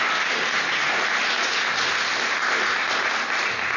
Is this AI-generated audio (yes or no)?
no